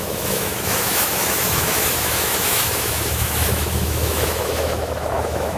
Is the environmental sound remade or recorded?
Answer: remade